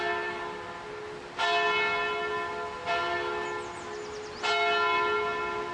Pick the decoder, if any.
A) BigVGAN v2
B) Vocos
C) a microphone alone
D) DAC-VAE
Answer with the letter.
C